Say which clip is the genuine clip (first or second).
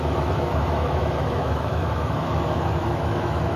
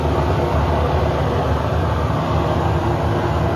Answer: second